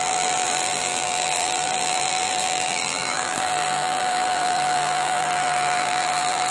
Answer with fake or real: fake